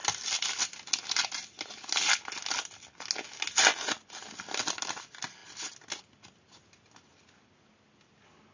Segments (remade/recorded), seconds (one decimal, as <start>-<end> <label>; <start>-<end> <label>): 0.0-8.5 recorded